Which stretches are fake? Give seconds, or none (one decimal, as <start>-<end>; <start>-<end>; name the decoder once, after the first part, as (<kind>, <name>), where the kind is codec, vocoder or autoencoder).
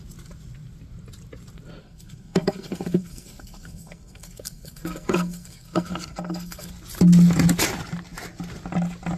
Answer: 1.8-6.7 (codec, SNAC)